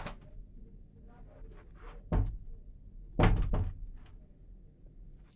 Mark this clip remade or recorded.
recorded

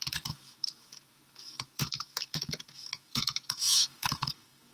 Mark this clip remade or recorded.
remade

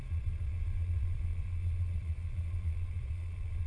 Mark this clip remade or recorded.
remade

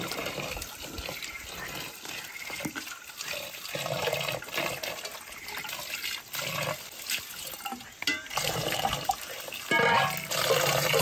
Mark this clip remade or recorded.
recorded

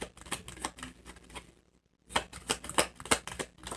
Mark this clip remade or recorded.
recorded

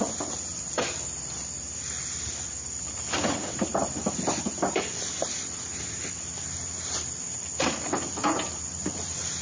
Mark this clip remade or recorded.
remade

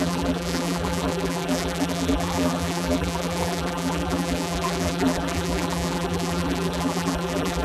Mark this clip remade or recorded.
remade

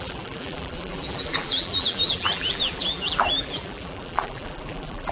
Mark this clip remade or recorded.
remade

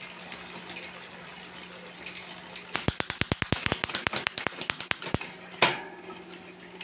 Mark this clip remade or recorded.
recorded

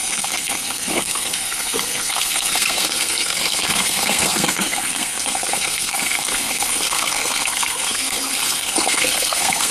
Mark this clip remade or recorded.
remade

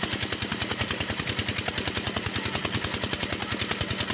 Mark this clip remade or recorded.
recorded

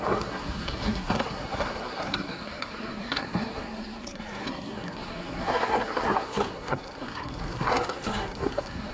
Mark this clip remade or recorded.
remade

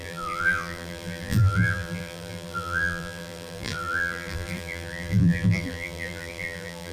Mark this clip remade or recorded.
remade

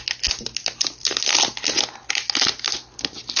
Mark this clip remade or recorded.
recorded